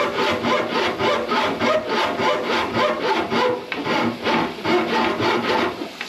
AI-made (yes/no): no